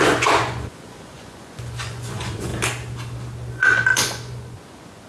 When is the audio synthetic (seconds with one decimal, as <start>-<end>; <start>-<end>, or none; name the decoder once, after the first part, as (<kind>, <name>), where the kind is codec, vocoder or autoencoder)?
0.0-2.5 (vocoder, Vocos); 3.5-5.1